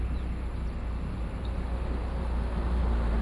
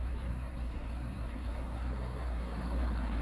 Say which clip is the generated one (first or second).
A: second